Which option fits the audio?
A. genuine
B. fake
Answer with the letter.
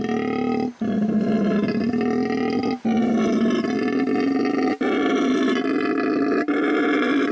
A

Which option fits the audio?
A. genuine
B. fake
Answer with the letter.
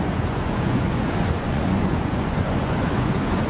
B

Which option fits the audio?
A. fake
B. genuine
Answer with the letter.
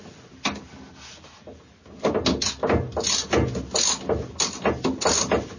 B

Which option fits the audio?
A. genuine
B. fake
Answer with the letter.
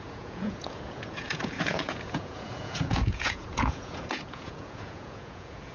B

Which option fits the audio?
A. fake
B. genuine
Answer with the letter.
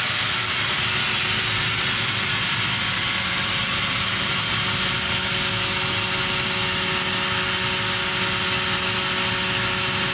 B